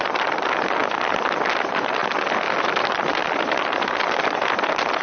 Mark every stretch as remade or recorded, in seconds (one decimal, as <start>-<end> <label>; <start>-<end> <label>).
0.0-0.8 remade; 0.8-1.5 recorded; 1.5-5.0 remade